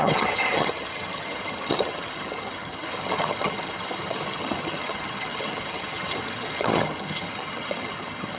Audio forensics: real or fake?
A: fake